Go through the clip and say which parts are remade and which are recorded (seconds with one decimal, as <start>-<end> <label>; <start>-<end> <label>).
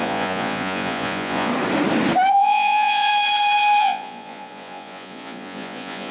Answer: 0.0-1.5 remade; 1.5-2.3 recorded; 2.3-3.1 remade; 3.1-3.8 recorded; 3.8-6.1 remade